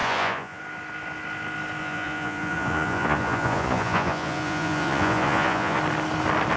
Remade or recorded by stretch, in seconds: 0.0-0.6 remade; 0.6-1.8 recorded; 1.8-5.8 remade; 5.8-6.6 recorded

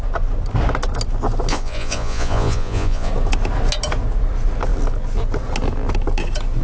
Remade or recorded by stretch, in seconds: 0.0-1.5 recorded; 1.5-3.1 remade; 3.1-6.6 recorded